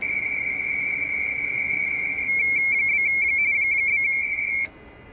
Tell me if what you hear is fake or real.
real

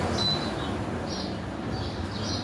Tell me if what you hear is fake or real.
real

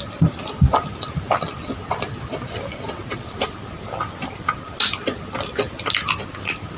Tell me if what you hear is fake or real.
real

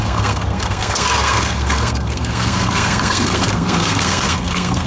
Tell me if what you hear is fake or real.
fake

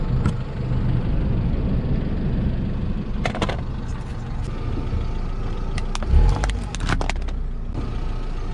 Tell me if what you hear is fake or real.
real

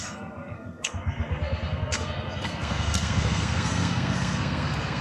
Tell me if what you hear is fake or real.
fake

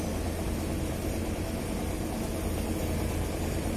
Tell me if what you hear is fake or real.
real